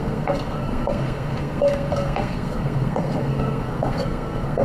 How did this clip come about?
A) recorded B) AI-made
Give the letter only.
B